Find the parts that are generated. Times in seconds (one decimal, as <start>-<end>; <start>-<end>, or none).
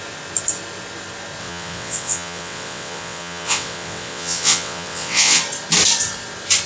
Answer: 1.4-5.4